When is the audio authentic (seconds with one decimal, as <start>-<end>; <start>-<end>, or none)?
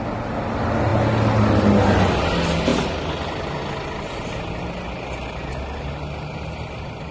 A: 0.0-7.1